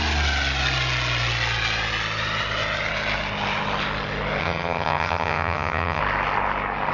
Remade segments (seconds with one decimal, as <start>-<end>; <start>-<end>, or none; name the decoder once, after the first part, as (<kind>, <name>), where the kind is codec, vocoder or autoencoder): 4.4-6.0 (vocoder, HiFi-GAN)